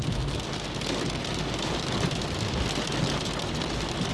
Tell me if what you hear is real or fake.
real